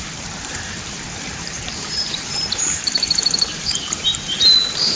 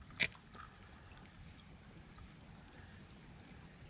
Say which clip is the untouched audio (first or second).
second